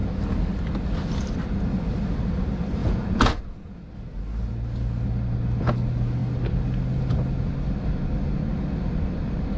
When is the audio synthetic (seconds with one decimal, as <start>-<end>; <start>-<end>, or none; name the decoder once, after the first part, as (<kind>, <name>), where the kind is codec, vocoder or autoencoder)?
2.8-3.8 (vocoder, Vocos)